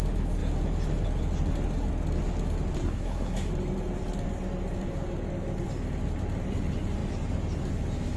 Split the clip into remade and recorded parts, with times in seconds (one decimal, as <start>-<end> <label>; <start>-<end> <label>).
0.0-2.8 recorded; 2.8-3.5 remade; 3.5-8.2 recorded